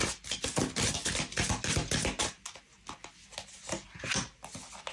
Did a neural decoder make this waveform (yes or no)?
no